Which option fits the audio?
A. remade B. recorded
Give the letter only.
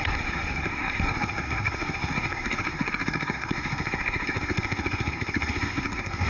A